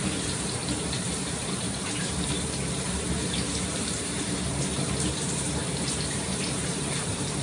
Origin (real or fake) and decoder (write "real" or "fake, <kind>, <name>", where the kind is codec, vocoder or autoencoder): fake, vocoder, BigVGAN v2